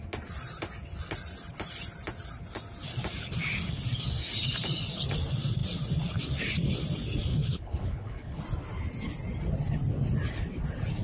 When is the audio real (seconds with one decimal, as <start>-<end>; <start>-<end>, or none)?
0.0-7.3; 8.4-11.0

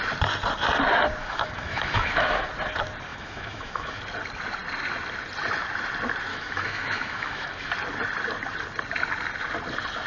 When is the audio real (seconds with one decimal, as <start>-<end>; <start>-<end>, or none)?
0.0-1.2; 2.5-3.1; 4.0-6.3; 7.7-10.1

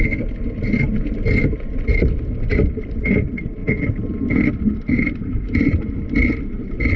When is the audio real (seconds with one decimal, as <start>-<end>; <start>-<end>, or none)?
0.0-7.0

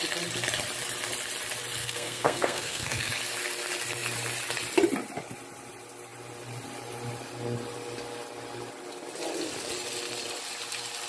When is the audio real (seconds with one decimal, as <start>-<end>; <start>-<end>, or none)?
0.0-1.8; 3.1-11.1

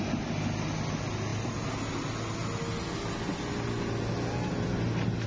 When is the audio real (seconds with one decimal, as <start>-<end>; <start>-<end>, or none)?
0.0-5.3

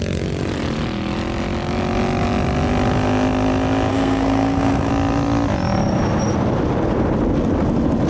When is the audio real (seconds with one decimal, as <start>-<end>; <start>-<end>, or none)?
0.0-3.9; 4.9-8.1

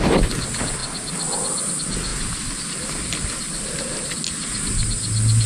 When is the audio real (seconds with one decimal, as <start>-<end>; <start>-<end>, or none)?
0.0-5.5